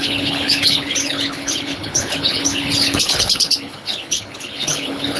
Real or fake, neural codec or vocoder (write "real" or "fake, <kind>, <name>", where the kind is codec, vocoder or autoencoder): fake, codec, HILCodec